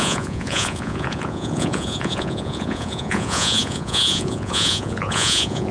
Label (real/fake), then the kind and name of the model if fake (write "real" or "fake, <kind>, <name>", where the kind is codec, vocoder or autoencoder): fake, vocoder, Vocos